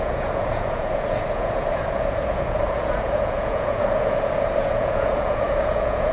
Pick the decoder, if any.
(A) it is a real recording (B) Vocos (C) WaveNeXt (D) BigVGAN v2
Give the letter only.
B